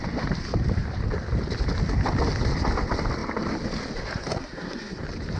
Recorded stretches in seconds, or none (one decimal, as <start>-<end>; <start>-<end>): 0.0-4.4; 5.0-5.4